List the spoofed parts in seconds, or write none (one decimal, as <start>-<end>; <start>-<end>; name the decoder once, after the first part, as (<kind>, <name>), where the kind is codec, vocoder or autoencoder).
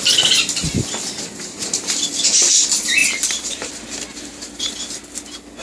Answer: 3.0-3.7 (vocoder, BigVGAN v2)